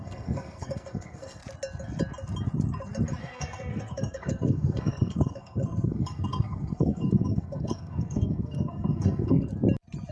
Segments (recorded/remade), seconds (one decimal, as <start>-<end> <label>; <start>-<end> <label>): 0.0-1.4 remade; 1.4-3.2 recorded; 3.2-9.5 remade; 9.5-10.1 recorded